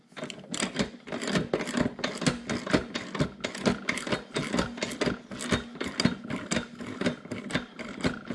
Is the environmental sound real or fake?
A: real